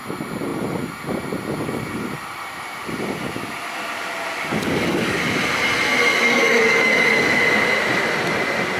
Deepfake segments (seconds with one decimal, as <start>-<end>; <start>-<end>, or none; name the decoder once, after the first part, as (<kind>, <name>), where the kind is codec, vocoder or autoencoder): 4.6-5.2 (codec, DAC); 6.1-7.4